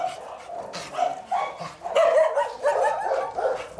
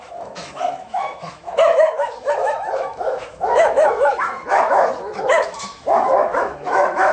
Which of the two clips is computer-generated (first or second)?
second